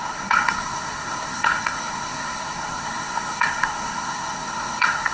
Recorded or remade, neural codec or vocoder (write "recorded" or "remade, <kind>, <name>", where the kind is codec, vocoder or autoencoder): remade, codec, SNAC